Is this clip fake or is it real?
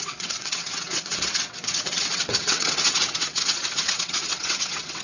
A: fake